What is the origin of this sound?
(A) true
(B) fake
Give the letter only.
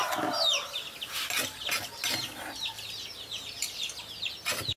A